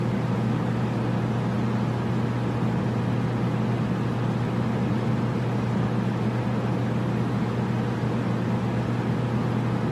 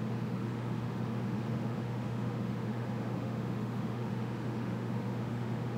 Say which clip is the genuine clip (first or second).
first